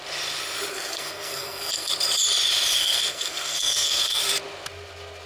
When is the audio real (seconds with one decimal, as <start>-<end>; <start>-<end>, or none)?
0.0-0.7; 1.9-2.8; 4.2-5.3